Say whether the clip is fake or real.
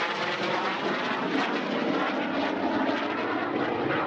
real